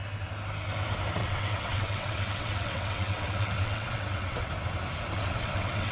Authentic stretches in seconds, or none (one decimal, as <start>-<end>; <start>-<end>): 0.0-1.2; 4.5-5.1